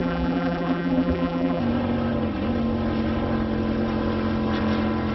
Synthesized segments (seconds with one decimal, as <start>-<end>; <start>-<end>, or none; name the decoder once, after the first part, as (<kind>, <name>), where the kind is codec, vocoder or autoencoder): 0.0-1.6 (vocoder, BigVGAN v2)